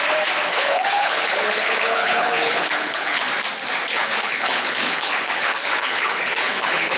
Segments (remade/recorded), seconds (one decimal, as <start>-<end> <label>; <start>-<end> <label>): 0.0-0.5 recorded; 0.5-3.2 remade; 3.2-3.9 recorded; 3.9-7.0 remade